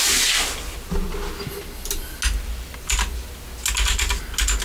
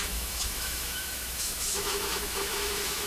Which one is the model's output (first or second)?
second